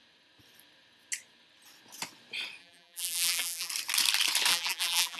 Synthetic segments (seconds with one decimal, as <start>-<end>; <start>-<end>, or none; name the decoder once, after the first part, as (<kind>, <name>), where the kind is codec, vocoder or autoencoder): 2.6-3.7 (vocoder, BigVGAN v2); 4.5-5.2